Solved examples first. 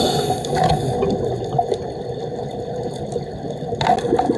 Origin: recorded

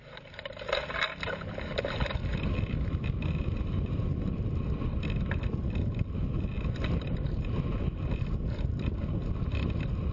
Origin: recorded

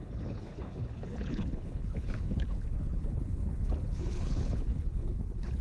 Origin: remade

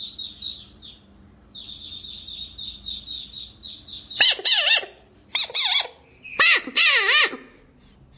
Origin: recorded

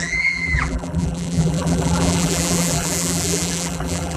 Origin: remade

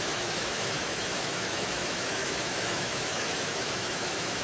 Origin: remade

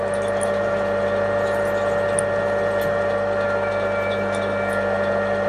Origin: recorded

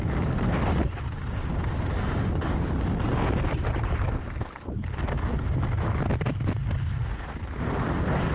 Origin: recorded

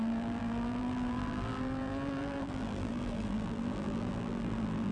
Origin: remade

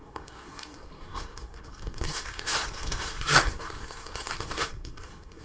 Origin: remade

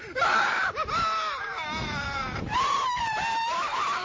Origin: remade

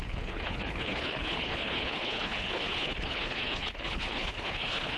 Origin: remade